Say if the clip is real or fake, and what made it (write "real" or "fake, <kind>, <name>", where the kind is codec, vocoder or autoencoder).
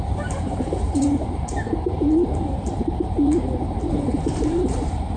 fake, vocoder, BigVGAN v2